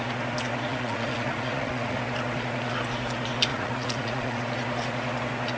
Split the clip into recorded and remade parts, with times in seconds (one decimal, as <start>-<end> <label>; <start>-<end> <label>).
0.0-0.7 recorded; 0.7-2.0 remade; 2.0-3.5 recorded; 3.5-4.4 remade; 4.4-5.6 recorded